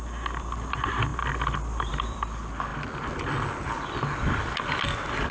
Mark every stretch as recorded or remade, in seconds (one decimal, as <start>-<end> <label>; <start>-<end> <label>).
0.0-5.3 recorded